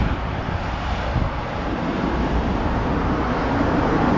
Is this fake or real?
real